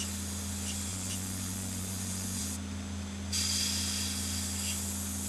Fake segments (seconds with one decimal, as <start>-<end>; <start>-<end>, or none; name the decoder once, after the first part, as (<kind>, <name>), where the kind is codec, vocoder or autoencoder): 0.9-2.4 (vocoder, Vocos)